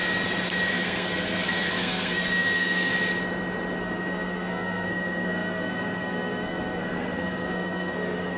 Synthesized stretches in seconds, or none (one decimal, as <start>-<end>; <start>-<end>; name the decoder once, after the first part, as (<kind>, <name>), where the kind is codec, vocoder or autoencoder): 0.7-2.9 (codec, SNAC); 3.8-8.4